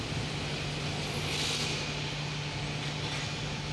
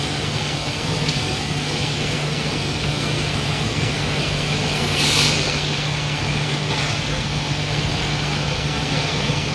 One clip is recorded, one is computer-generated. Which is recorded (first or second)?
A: first